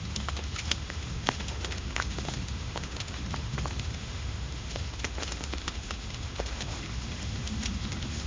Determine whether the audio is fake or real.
fake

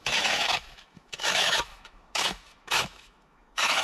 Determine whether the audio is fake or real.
fake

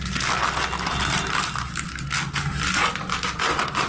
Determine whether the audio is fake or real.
real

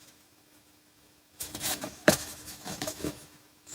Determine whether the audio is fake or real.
fake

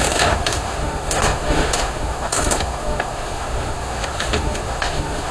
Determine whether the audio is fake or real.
fake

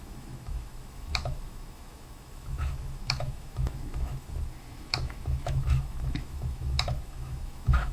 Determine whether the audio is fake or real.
fake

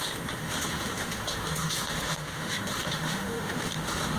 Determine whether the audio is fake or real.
fake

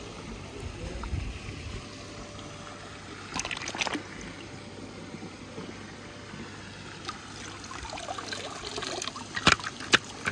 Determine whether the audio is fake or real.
real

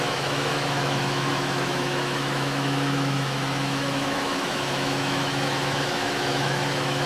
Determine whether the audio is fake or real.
fake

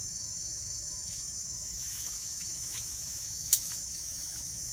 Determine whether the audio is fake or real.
fake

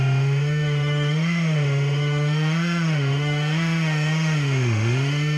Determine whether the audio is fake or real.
fake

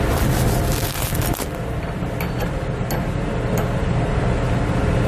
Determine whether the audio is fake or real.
real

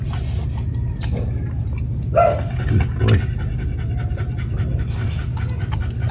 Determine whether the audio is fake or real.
real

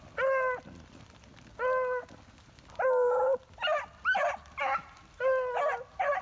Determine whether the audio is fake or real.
real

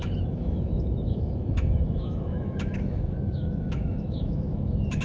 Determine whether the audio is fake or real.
fake